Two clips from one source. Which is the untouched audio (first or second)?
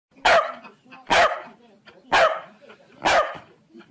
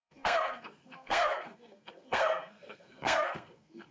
first